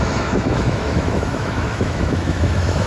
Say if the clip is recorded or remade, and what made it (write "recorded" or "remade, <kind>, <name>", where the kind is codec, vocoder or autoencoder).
remade, autoencoder, DAC-VAE